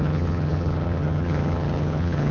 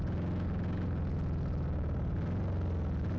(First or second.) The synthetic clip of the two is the first